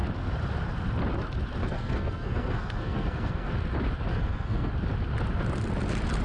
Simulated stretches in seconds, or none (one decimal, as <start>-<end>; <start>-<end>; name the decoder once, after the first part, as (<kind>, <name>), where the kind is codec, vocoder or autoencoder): 1.6-3.5 (codec, SNAC); 4.1-4.7